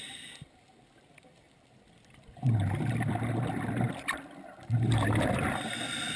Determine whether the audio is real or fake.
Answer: real